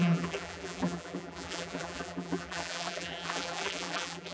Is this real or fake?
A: fake